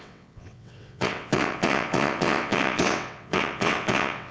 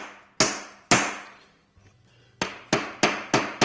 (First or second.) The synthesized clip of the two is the first